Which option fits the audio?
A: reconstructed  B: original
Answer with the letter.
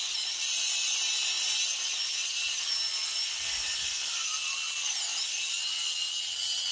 B